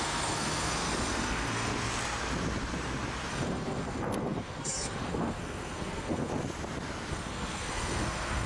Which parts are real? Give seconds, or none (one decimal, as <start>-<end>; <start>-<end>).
1.7-3.3; 6.3-7.1

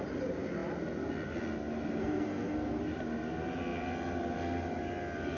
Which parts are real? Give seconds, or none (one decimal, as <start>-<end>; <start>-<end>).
0.0-2.0; 2.8-5.4

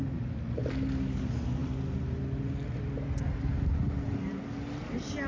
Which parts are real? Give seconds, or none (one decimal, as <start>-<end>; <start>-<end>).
0.0-5.3

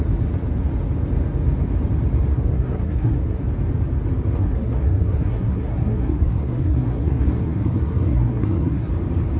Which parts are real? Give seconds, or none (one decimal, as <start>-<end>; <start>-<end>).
0.0-2.3; 3.4-4.4; 8.9-9.4

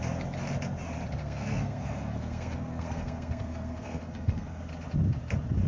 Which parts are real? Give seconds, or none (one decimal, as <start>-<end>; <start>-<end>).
0.0-1.2; 4.6-5.7